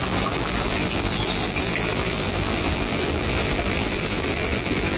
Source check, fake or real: fake